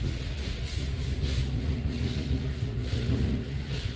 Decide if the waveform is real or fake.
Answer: fake